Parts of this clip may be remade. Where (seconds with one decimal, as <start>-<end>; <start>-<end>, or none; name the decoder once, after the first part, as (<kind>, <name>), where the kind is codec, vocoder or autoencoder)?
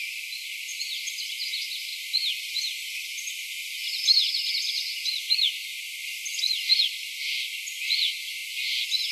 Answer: none